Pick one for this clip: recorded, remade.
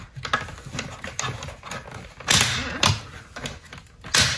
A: recorded